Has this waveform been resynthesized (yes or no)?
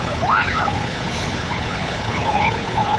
yes